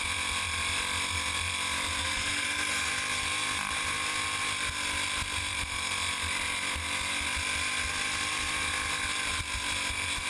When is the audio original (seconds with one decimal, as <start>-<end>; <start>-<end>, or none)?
0.0-2.0; 2.9-10.3